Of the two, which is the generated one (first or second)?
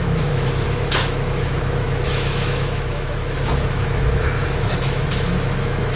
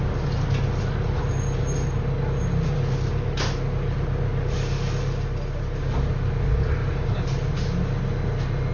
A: first